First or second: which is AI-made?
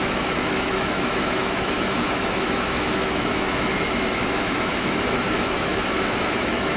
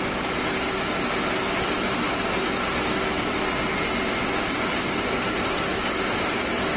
first